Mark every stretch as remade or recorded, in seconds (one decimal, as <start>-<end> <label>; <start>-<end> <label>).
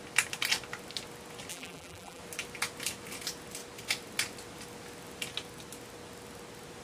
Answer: 0.0-1.5 recorded; 1.5-2.2 remade; 2.2-6.8 recorded